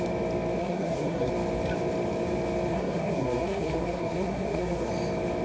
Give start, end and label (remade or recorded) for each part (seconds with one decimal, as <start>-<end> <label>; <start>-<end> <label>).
0.0-0.6 recorded; 0.6-1.3 remade; 1.3-2.7 recorded; 2.7-4.9 remade; 4.9-5.4 recorded